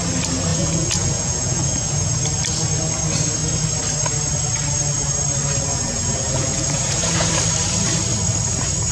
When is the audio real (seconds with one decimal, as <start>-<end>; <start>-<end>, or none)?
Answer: 0.0-0.5; 2.2-5.7; 7.3-8.9